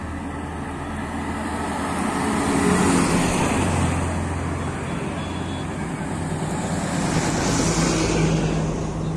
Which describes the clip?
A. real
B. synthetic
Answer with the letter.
A